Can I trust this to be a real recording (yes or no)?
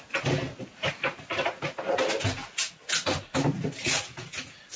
yes